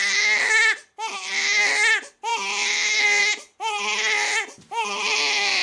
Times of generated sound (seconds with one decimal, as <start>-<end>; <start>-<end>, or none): none